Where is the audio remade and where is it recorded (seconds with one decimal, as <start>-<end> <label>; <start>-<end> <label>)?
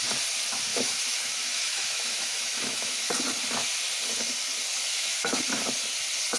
0.0-0.7 recorded; 0.7-3.1 remade; 3.1-4.9 recorded; 4.9-5.4 remade; 5.4-6.4 recorded